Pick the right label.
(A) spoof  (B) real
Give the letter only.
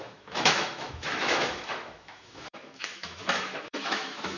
A